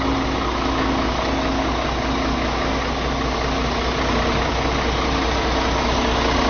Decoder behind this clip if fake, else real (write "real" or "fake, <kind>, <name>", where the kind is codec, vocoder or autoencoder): real